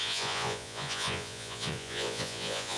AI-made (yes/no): yes